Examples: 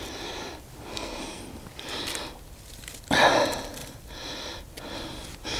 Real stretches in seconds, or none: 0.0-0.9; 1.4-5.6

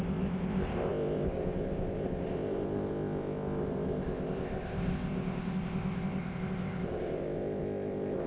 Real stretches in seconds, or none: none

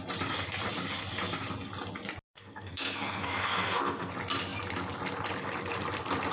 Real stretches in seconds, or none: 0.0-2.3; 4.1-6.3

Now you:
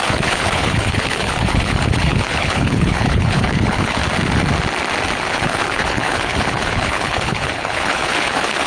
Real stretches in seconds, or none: 4.0-5.3

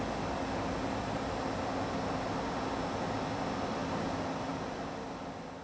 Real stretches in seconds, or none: 0.0-5.6

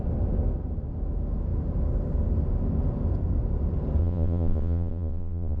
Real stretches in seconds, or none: 0.0-4.0

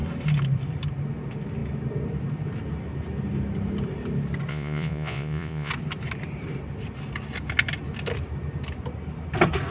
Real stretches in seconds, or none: 0.0-4.5; 5.7-9.7

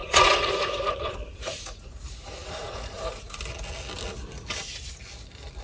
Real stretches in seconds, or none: 3.4-5.6